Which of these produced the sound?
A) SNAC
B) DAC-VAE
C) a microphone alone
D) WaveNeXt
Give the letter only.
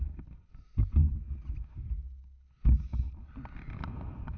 C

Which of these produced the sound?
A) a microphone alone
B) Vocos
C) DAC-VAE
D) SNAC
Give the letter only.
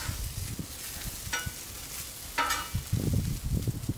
A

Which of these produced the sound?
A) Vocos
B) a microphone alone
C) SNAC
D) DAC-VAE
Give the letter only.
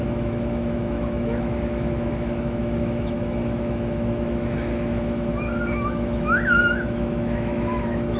D